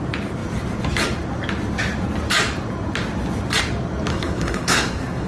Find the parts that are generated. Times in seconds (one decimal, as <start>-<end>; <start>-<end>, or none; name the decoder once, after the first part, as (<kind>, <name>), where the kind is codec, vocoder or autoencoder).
4.1-5.3 (codec, SNAC)